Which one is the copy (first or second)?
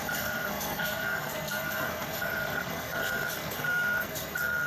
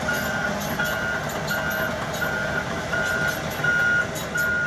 first